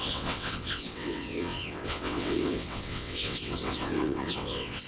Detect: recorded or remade remade